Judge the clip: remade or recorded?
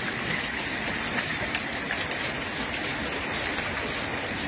recorded